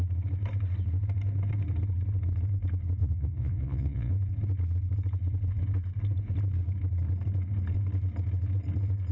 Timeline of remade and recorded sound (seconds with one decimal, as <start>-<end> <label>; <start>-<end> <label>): 0.0-3.0 recorded; 3.0-4.1 remade; 4.1-9.1 recorded